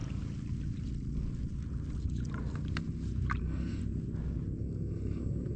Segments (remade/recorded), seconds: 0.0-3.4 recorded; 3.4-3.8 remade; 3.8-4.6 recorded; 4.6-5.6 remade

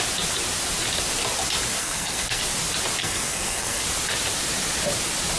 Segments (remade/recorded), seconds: 0.0-1.8 recorded; 1.8-2.4 remade; 2.4-3.0 recorded; 3.0-3.8 remade; 3.8-5.4 recorded

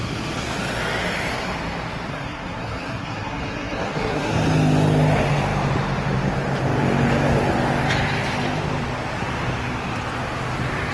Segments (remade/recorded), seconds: 0.0-2.1 recorded; 2.1-4.3 remade; 4.3-10.9 recorded